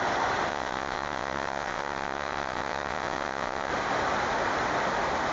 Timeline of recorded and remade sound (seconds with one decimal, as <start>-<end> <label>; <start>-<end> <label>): 0.0-0.5 recorded; 0.5-3.7 remade; 3.7-5.3 recorded